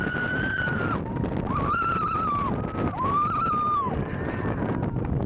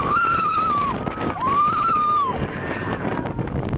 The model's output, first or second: second